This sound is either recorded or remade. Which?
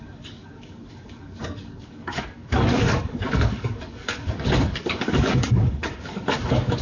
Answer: remade